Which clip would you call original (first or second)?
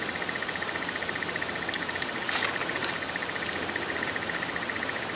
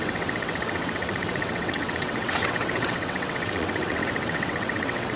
first